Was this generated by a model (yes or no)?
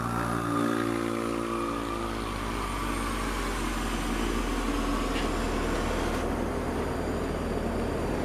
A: no